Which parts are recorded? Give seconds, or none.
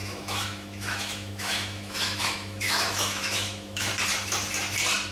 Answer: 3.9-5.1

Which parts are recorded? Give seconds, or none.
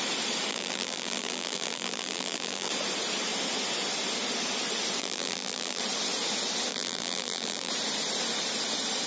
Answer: 0.0-0.5; 2.7-5.0; 5.8-6.7; 7.7-9.1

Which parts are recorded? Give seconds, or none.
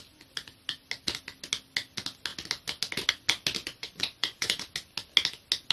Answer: 0.0-3.6; 4.7-5.7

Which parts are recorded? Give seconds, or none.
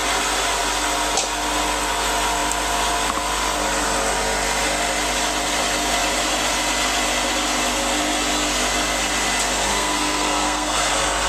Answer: 0.0-9.7; 10.9-11.3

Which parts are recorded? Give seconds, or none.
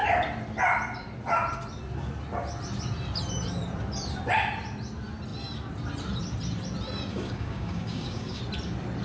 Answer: 0.0-7.1; 8.4-9.0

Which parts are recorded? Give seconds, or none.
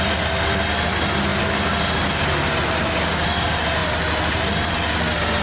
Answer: 0.0-5.4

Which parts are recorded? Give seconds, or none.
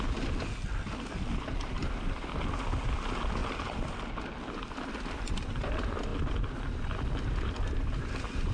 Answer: 0.0-1.8; 2.4-3.4; 4.0-8.5